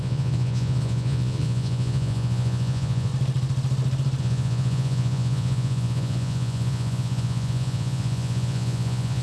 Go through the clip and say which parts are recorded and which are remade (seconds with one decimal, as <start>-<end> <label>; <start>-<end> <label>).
0.0-3.1 remade; 3.1-4.2 recorded; 4.2-9.2 remade

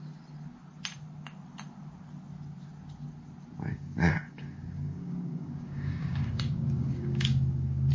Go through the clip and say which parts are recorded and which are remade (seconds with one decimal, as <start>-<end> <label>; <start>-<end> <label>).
0.0-3.7 recorded; 3.7-7.9 remade

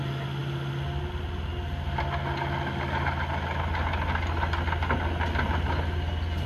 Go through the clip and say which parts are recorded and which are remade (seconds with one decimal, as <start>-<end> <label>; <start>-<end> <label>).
0.0-6.5 recorded

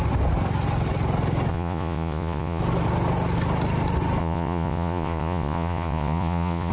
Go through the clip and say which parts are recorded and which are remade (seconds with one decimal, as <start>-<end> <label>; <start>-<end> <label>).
0.0-1.5 recorded; 1.5-2.6 remade; 2.6-4.2 recorded; 4.2-6.7 remade

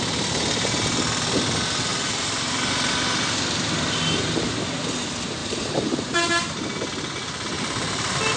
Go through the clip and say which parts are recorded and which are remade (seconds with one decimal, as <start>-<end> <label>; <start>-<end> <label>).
0.0-1.9 recorded; 1.9-2.7 remade; 2.7-5.4 recorded; 5.4-8.4 remade

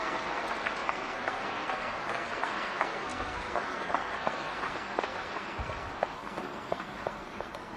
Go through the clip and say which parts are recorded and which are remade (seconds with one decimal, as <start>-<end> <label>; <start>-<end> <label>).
0.0-7.8 remade

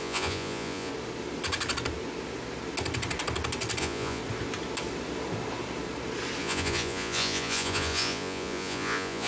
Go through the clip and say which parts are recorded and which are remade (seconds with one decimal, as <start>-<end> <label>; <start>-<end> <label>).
0.0-0.9 remade; 0.9-3.8 recorded; 3.8-4.2 remade; 4.2-6.4 recorded; 6.4-9.3 remade